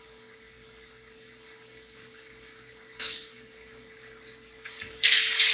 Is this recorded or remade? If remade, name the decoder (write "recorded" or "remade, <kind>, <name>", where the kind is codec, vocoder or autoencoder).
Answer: remade, codec, DAC